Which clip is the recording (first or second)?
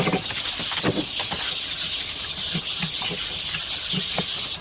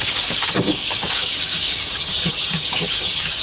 first